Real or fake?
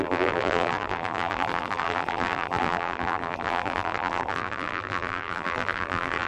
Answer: fake